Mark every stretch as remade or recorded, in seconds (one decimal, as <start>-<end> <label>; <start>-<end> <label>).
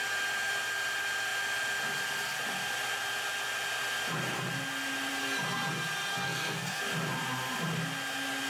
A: 0.0-6.1 recorded; 6.1-6.8 remade; 6.8-8.5 recorded